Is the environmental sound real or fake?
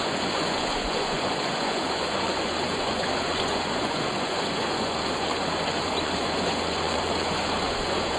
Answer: fake